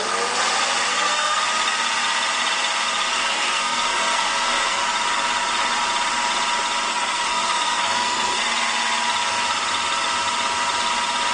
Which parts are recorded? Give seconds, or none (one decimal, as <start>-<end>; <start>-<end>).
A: 0.0-0.9; 1.4-3.1; 4.8-6.9; 8.4-11.3